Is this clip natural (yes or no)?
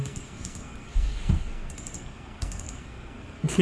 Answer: no